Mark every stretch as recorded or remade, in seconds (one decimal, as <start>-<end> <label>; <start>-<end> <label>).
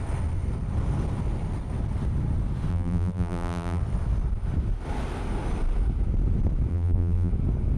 0.0-2.7 recorded; 2.7-3.8 remade; 3.8-6.7 recorded; 6.7-7.3 remade; 7.3-7.8 recorded